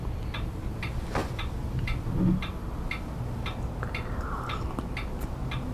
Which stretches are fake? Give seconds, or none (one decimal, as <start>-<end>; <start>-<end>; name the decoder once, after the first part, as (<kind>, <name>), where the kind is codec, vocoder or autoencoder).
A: none